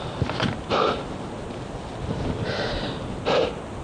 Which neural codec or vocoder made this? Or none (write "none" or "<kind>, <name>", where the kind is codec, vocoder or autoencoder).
none